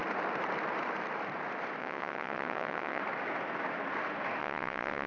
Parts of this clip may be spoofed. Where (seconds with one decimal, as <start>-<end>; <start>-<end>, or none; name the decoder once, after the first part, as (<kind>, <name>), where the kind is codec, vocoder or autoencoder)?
1.8-3.0 (vocoder, WaveNeXt); 4.4-5.1